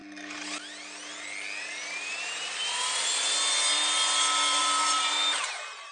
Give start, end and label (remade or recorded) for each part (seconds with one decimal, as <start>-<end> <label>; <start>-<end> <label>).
0.0-4.6 recorded; 4.6-5.9 remade